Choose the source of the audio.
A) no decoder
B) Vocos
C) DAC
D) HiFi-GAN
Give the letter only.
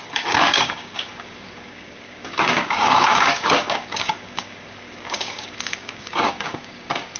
C